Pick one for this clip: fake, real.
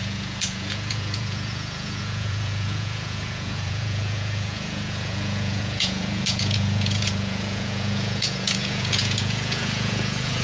fake